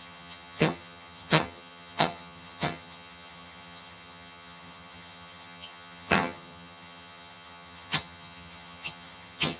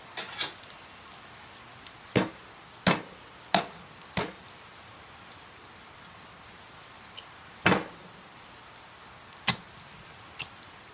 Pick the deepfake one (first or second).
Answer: first